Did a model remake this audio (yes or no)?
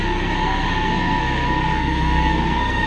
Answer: yes